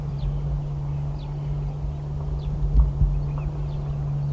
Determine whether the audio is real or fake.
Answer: real